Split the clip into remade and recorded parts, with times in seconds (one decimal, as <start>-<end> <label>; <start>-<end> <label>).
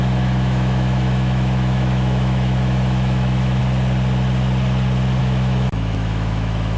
0.0-3.6 remade; 3.6-5.2 recorded; 5.2-6.8 remade